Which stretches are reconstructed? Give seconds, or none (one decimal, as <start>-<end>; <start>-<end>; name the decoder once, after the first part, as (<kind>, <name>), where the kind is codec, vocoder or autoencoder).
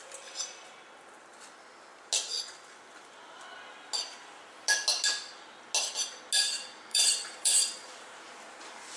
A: 6.9-8.3 (vocoder, BigVGAN v2)